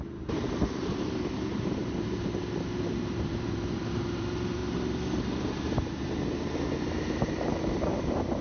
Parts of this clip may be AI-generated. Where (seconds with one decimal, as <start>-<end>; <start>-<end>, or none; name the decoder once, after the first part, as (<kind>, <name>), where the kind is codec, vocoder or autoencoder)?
0.0-4.6 (vocoder, BigVGAN v2); 6.9-8.4